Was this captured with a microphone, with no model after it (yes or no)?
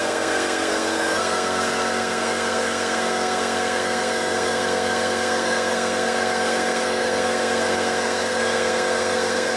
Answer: no